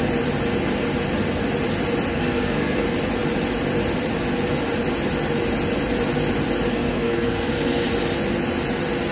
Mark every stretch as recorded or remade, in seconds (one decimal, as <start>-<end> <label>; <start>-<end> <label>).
0.0-2.1 recorded; 2.1-2.8 remade; 2.8-6.7 recorded; 6.7-7.9 remade; 7.9-9.1 recorded